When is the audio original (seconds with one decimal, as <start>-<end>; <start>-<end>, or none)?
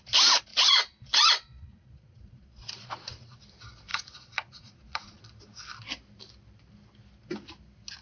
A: 0.0-0.5; 3.4-3.9; 5.2-8.0